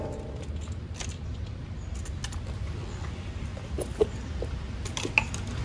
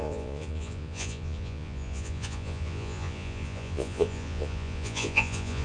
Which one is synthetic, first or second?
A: second